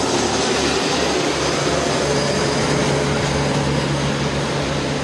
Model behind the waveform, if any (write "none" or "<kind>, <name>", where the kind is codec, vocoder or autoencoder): none